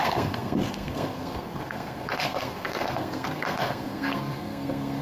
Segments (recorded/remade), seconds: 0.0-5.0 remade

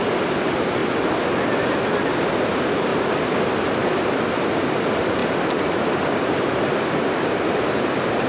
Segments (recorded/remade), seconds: 0.0-2.9 recorded; 2.9-3.4 remade; 3.4-5.2 recorded; 5.2-7.2 remade; 7.2-8.3 recorded

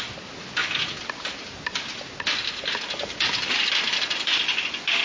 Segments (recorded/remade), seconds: 0.0-5.0 recorded

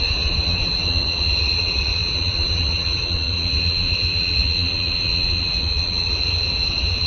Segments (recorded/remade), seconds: 0.0-7.1 remade

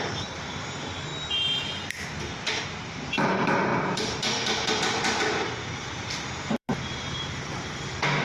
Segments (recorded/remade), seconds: 0.0-1.1 remade; 1.1-2.9 recorded; 2.9-3.7 remade; 3.7-4.8 recorded; 4.8-8.2 remade

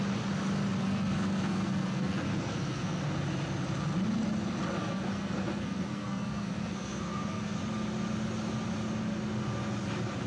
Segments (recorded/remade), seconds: 0.0-0.8 recorded; 0.8-3.0 remade; 3.0-4.8 recorded; 4.8-7.6 remade; 7.6-10.3 recorded